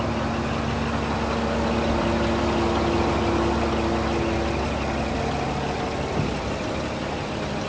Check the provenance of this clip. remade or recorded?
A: recorded